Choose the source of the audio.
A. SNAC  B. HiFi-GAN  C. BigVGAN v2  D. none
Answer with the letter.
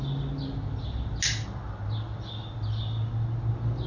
D